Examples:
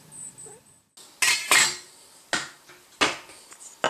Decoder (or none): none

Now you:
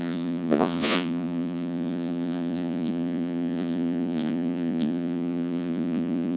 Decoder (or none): vocoder, Vocos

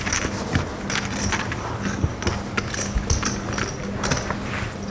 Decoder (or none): none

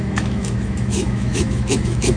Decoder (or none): autoencoder, DAC-VAE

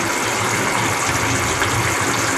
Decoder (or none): none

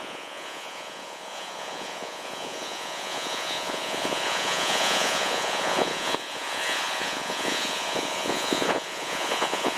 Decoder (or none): vocoder, Vocos